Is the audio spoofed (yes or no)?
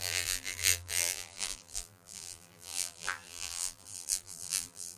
yes